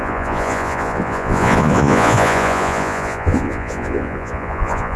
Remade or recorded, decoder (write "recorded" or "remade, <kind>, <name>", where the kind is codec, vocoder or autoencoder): remade, vocoder, Vocos